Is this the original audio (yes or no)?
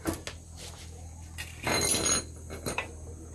yes